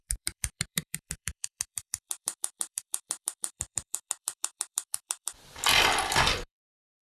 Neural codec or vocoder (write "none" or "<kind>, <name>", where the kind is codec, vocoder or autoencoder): vocoder, BigVGAN v2